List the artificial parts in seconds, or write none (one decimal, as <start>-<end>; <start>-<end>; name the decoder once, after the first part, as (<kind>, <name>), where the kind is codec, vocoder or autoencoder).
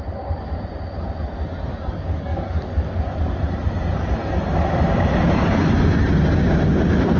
1.7-3.0 (codec, DAC)